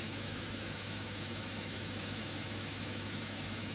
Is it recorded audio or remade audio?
remade